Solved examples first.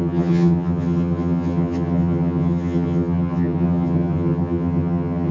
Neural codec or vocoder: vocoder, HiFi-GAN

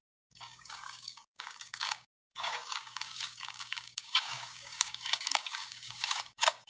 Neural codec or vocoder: codec, DAC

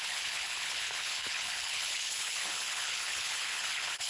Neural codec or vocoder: codec, HILCodec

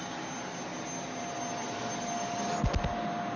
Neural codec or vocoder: none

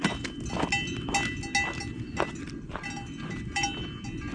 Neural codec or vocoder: none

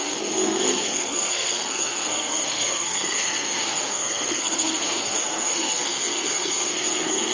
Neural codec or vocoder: codec, SNAC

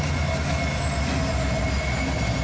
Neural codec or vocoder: none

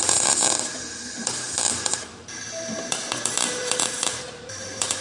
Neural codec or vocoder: vocoder, BigVGAN v2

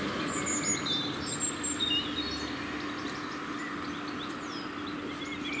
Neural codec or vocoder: none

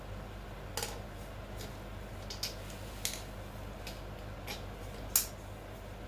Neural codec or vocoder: none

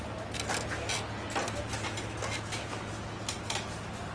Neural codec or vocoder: none